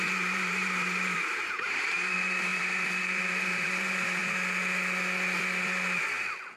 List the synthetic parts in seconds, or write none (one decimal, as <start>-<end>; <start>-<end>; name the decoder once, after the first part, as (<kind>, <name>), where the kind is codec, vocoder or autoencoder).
0.0-4.2 (vocoder, BigVGAN v2)